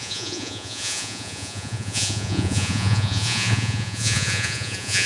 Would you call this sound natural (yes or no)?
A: no